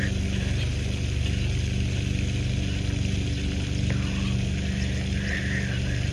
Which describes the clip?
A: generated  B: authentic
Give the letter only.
B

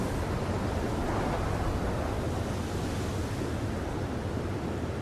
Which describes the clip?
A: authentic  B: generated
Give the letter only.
A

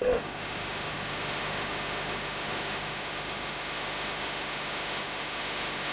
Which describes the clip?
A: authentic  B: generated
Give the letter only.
B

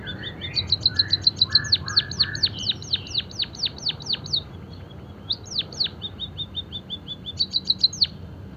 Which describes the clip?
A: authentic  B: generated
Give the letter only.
A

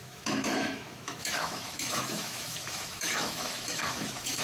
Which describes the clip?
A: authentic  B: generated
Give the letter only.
B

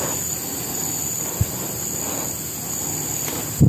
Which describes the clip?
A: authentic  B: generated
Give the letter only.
A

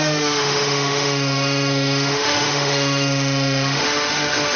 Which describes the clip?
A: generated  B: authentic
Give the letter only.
A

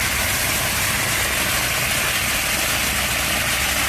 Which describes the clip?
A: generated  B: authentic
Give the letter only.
B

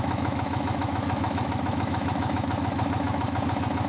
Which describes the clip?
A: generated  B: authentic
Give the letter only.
A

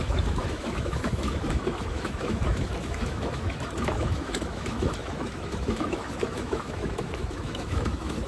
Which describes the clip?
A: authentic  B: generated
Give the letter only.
B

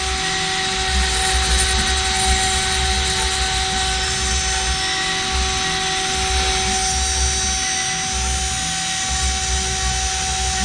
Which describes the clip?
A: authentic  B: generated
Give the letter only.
A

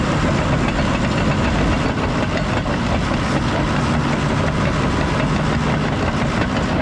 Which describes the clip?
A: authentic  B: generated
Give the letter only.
A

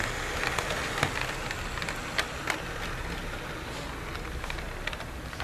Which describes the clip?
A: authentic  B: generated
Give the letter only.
A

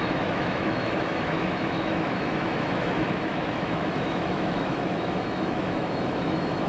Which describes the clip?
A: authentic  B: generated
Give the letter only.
B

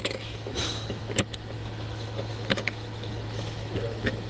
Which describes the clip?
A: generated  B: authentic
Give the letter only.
A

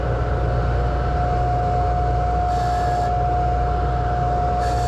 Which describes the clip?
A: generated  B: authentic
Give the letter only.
B